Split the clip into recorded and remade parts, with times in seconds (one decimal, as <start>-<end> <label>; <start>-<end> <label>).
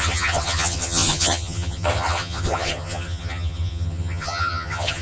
0.0-5.0 remade